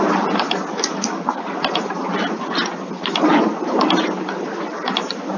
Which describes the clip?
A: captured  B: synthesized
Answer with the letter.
B